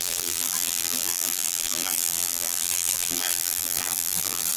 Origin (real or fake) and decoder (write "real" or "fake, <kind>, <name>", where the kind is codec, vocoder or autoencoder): fake, vocoder, BigVGAN v2